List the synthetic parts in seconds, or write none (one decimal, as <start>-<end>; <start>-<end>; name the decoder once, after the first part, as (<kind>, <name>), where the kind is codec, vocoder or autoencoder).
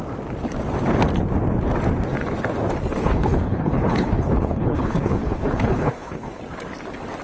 3.0-6.4 (codec, HILCodec)